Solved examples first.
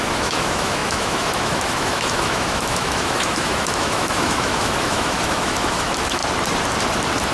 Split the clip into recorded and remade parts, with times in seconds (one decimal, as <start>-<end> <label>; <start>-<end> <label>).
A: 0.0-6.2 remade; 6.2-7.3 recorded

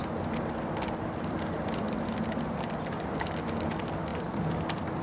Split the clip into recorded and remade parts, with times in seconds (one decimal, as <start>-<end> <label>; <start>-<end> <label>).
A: 0.0-5.0 recorded

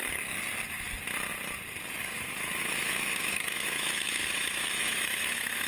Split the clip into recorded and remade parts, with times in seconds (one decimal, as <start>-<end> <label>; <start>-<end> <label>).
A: 0.0-2.0 recorded; 2.0-5.7 remade

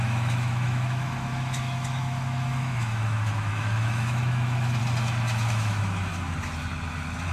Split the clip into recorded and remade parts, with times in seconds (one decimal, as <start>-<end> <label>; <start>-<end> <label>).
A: 0.0-4.8 remade; 4.8-5.5 recorded; 5.5-6.1 remade; 6.1-7.3 recorded